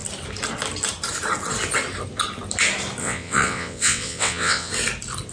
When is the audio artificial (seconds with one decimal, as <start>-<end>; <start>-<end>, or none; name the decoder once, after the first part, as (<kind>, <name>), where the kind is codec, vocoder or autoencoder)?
3.0-4.7 (vocoder, WaveNeXt)